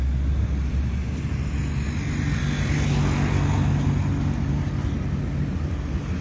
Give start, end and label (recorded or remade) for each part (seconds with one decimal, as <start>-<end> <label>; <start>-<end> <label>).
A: 0.0-0.7 recorded; 0.7-1.6 remade; 1.6-6.2 recorded